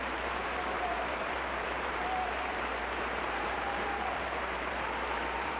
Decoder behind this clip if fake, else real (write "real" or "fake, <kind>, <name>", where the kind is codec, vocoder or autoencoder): fake, vocoder, BigVGAN v2